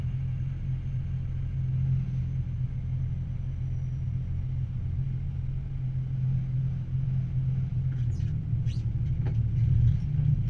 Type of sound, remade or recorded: recorded